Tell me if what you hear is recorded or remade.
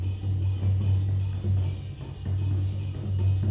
recorded